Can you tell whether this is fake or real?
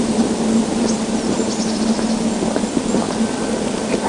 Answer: real